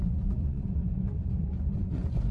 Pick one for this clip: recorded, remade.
remade